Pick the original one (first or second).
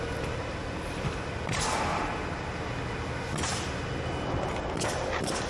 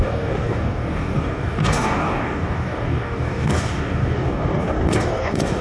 first